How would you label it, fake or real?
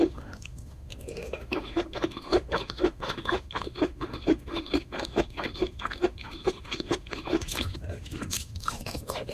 fake